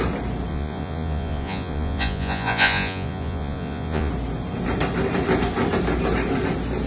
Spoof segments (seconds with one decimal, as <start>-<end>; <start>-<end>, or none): 0.5-4.1

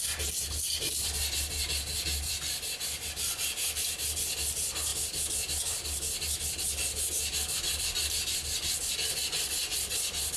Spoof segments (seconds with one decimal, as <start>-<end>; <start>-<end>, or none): none

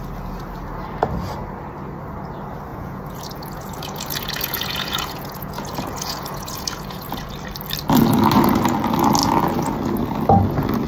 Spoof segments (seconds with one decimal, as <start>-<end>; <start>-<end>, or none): 2.7-7.3

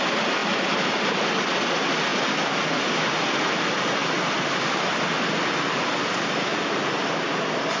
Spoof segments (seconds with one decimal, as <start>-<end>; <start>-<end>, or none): none

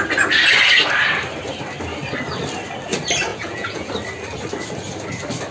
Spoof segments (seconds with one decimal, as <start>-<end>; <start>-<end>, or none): 3.3-3.9